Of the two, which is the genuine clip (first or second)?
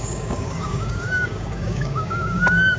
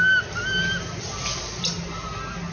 second